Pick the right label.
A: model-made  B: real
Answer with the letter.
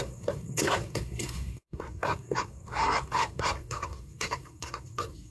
A